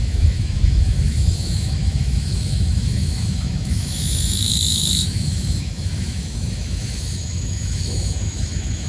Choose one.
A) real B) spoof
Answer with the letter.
B